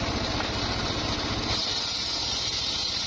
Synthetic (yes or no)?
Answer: no